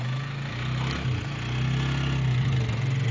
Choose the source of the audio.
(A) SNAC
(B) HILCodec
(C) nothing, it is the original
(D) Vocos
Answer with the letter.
C